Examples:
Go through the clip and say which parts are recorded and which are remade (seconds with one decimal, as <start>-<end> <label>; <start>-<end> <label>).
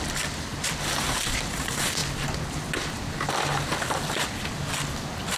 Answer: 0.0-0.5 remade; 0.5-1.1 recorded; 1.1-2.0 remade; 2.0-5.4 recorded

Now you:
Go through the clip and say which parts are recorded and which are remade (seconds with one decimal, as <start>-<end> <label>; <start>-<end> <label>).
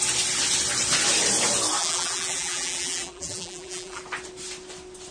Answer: 0.0-1.8 recorded; 1.8-4.0 remade; 4.0-5.1 recorded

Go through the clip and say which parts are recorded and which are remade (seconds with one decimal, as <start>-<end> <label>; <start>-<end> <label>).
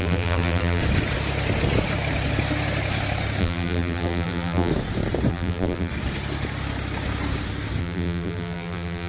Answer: 0.0-0.8 remade; 0.8-3.4 recorded; 3.4-4.7 remade; 4.7-5.3 recorded; 5.3-5.9 remade; 5.9-7.8 recorded; 7.8-9.1 remade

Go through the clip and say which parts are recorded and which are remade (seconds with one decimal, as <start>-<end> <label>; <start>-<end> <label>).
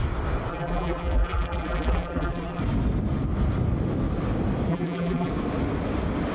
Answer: 0.0-0.5 recorded; 0.5-2.6 remade; 2.6-4.7 recorded; 4.7-5.3 remade; 5.3-6.3 recorded